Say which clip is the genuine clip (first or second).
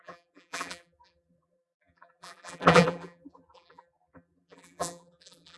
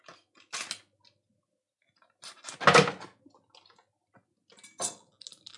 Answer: second